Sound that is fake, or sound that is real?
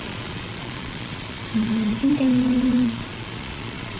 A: fake